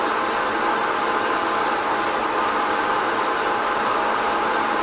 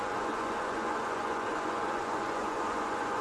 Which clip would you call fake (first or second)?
second